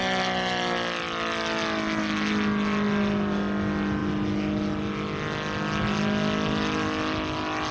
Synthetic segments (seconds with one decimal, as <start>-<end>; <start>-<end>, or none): none